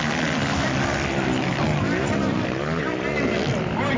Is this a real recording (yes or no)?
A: yes